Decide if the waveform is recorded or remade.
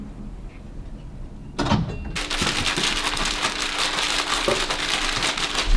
recorded